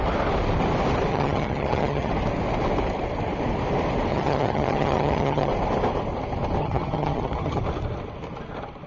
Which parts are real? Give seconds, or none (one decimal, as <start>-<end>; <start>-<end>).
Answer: 0.0-1.1; 2.1-4.1; 5.5-6.6; 7.6-8.9